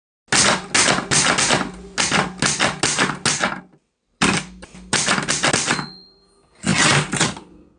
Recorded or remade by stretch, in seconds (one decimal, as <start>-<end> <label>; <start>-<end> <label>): 0.0-7.8 recorded

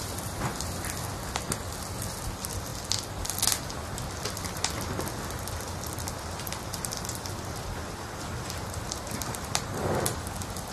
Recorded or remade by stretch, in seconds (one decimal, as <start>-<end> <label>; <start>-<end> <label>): 0.0-10.7 recorded

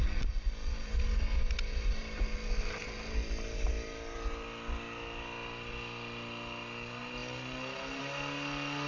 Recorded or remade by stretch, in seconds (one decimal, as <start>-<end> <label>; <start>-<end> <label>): 0.0-8.9 recorded

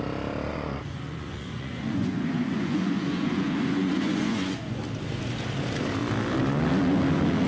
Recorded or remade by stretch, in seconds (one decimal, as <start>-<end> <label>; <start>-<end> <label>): 0.0-0.5 recorded; 0.5-4.8 remade; 4.8-7.5 recorded